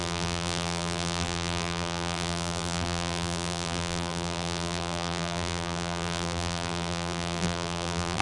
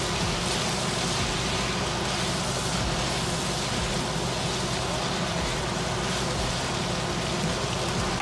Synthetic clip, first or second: first